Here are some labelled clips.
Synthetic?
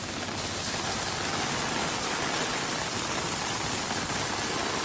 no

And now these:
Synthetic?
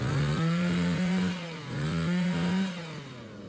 yes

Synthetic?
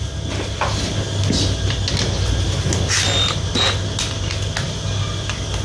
no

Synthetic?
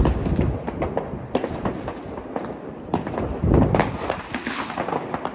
no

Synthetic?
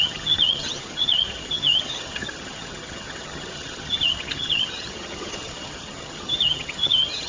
yes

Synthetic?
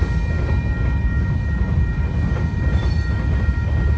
no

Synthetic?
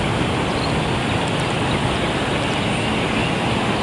no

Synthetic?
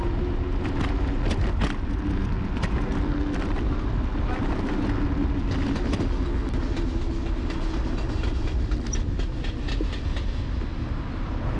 no